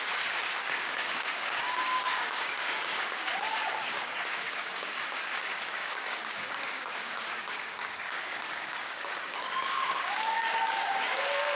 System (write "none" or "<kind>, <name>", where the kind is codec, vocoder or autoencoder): codec, DAC